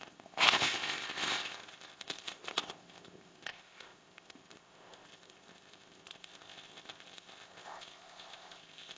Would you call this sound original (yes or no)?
no